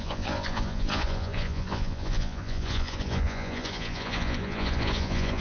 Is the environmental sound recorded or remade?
remade